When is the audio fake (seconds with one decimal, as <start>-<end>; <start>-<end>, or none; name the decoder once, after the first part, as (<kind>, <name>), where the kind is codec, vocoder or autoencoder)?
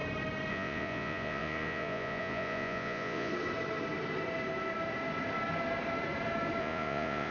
0.5-3.3 (vocoder, Vocos); 6.6-7.3